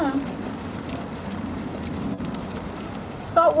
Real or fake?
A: fake